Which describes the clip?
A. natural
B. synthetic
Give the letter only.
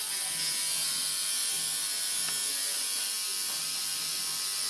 A